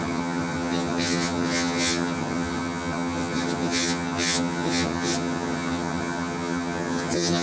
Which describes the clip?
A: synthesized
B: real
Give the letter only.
A